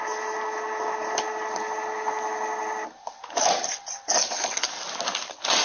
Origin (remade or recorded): recorded